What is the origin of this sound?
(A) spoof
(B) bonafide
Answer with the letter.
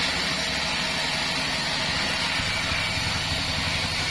B